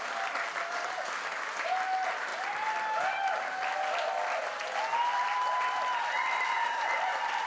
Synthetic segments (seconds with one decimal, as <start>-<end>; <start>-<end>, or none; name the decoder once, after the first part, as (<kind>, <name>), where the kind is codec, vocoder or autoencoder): none